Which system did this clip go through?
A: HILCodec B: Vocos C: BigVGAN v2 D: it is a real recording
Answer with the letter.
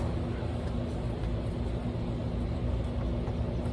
D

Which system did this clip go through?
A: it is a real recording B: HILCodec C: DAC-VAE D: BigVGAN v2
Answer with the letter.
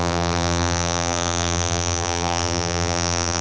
D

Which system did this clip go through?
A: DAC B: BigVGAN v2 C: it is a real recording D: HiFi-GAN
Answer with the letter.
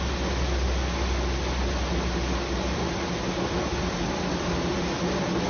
C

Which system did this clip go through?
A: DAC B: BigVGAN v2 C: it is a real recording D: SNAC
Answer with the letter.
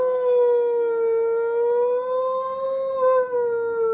C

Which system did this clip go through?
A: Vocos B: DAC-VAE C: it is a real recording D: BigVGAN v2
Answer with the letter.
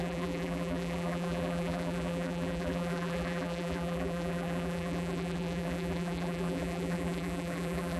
D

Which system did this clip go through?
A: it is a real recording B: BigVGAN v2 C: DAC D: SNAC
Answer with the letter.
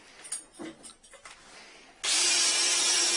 A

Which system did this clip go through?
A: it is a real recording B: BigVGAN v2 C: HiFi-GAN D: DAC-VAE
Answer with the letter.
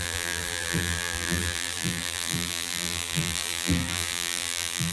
B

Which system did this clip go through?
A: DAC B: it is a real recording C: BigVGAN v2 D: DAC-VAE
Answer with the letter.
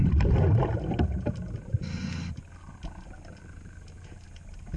B